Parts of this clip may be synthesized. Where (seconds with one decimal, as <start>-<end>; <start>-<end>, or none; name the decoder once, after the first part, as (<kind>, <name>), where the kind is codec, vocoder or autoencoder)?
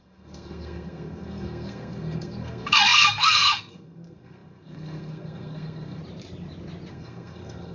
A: 0.0-6.0 (codec, SNAC); 6.9-7.7